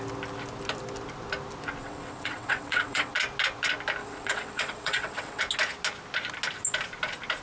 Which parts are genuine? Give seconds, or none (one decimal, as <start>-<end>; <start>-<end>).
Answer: 0.0-1.8; 3.1-4.0; 5.4-7.4